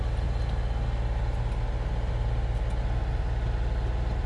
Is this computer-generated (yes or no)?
no